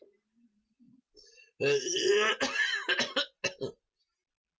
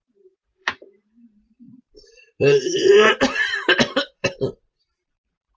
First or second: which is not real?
second